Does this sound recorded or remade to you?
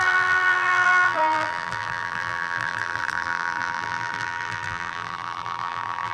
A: remade